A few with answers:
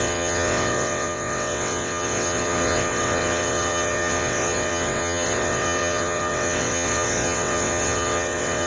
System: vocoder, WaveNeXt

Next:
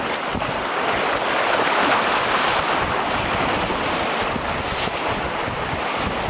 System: none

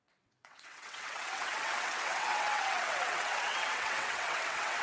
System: vocoder, WaveNeXt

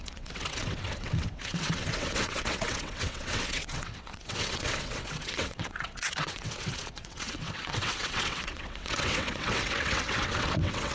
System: vocoder, WaveNeXt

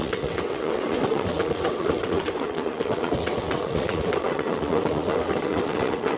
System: vocoder, WaveNeXt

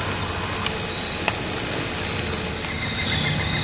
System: none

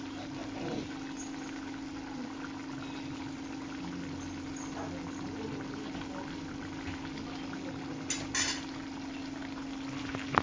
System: none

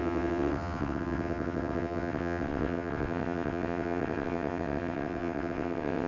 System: vocoder, WaveNeXt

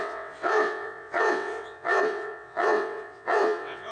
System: vocoder, WaveNeXt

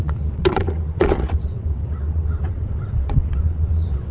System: vocoder, WaveNeXt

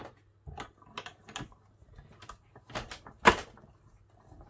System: none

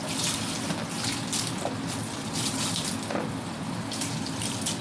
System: none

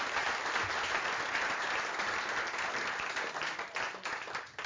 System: none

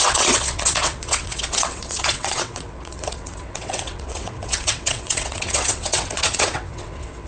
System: vocoder, WaveNeXt